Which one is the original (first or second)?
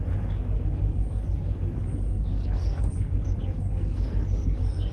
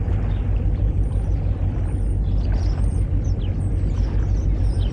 second